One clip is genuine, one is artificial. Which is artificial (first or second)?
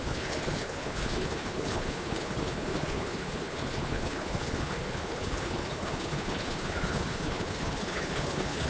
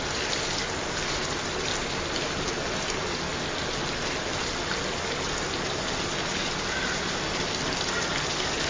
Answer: first